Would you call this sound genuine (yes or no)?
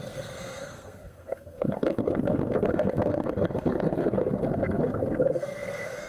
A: no